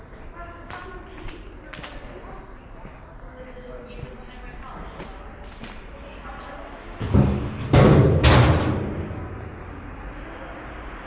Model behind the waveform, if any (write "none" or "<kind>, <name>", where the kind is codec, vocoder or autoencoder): none